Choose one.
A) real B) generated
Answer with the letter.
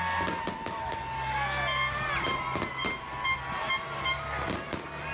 A